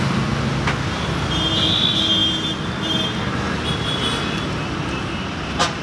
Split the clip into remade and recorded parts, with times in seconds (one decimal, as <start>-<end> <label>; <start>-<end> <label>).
0.0-5.8 recorded